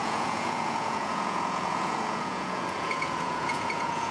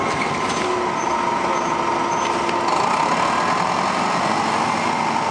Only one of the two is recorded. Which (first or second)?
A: second